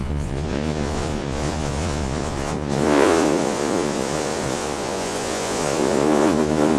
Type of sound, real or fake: fake